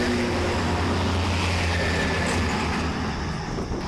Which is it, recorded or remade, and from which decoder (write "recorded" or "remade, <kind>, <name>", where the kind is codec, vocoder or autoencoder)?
recorded